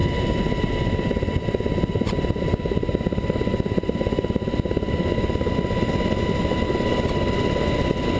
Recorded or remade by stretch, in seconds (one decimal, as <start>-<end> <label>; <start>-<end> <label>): 0.0-8.2 recorded